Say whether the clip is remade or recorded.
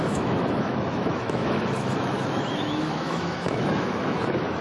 remade